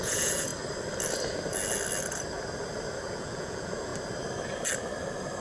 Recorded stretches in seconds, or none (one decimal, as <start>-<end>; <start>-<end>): 0.5-3.1; 3.9-5.4